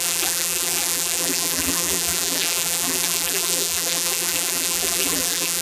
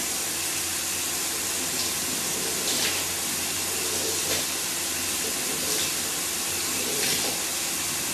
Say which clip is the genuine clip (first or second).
second